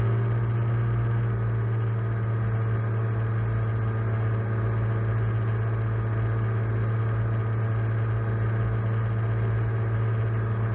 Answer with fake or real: real